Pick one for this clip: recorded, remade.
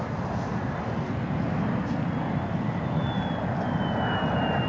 recorded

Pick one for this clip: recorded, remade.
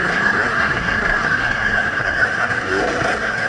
remade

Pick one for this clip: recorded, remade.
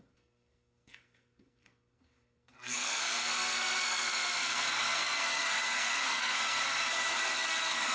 remade